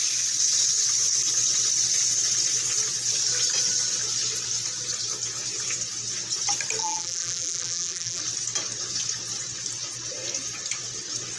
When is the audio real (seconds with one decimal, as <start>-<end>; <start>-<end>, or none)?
0.0-6.8; 8.2-11.4